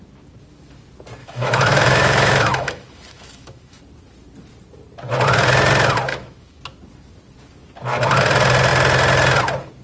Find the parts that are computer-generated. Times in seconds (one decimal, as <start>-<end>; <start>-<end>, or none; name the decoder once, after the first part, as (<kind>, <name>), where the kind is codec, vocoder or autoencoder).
1.2-3.8 (autoencoder, DAC-VAE); 6.1-6.6